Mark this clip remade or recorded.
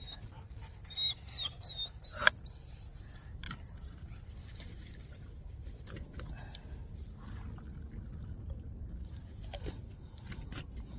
recorded